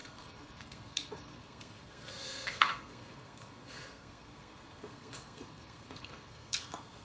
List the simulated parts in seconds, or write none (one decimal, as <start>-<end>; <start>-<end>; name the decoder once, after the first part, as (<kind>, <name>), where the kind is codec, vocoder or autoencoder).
0.0-7.0 (codec, SNAC)